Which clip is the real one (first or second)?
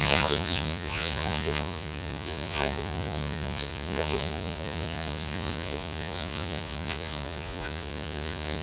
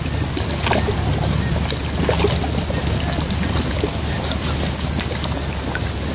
second